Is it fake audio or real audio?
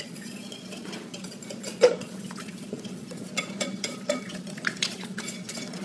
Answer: fake